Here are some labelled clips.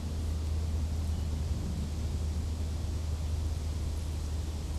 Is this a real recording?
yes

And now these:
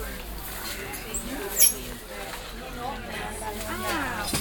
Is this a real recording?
yes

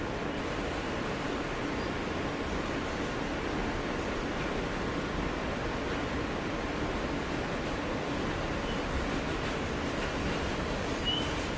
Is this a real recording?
yes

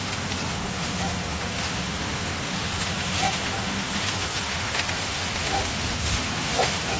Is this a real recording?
no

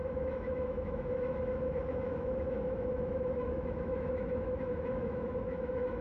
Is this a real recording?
no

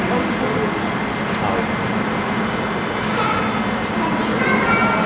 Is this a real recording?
yes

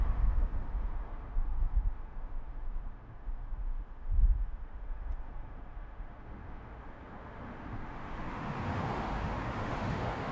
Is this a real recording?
no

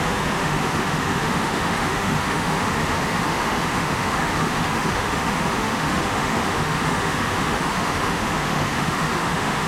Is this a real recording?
no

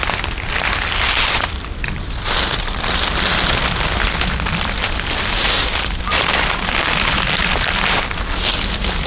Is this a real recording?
yes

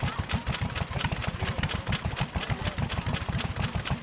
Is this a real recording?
yes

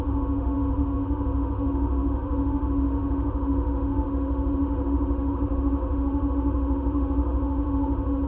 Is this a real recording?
no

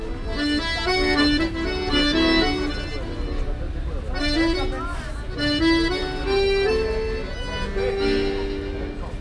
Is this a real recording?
yes